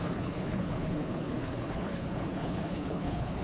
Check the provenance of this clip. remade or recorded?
remade